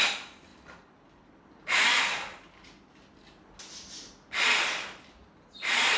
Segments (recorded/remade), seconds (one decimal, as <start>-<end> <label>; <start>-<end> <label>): 0.0-6.0 recorded